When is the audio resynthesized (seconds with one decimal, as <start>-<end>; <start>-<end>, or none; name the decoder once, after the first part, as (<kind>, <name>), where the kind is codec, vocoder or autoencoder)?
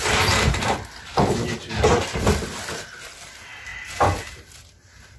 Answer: none